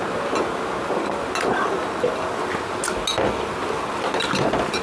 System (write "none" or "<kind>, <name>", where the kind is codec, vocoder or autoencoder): none